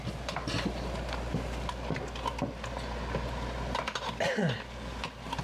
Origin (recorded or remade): recorded